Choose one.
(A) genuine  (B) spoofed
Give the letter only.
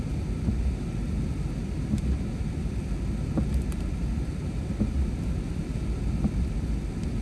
A